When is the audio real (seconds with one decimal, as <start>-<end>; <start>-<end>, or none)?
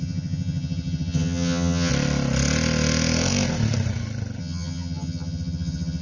1.9-4.4